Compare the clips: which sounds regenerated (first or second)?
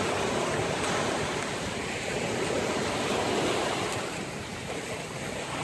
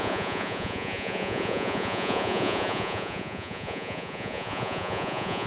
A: second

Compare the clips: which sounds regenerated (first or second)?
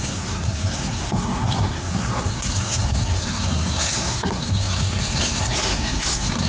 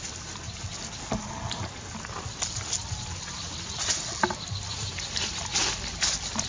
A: first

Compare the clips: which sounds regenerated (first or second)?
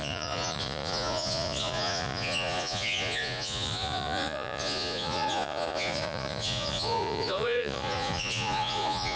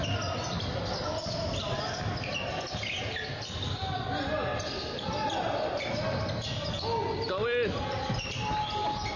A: first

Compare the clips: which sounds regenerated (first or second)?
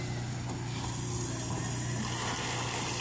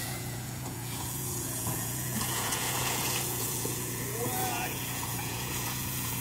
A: second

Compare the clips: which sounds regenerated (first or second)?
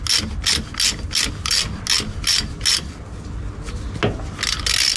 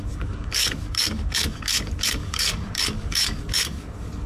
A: second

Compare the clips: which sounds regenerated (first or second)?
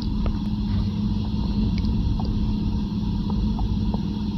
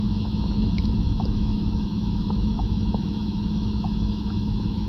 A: second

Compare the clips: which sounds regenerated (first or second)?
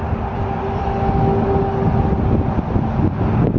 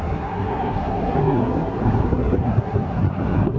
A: second